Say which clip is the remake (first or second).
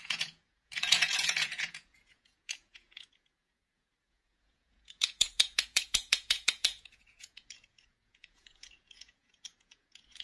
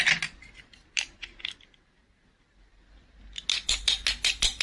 first